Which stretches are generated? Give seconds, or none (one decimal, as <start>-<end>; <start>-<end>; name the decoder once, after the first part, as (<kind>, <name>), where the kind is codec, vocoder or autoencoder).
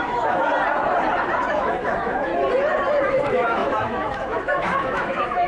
0.0-0.5 (autoencoder, DAC-VAE); 1.5-2.3; 3.1-5.5